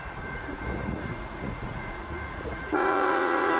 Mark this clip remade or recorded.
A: remade